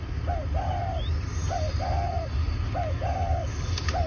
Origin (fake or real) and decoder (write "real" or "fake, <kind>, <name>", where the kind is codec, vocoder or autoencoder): real